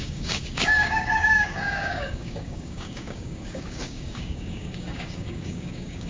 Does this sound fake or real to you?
fake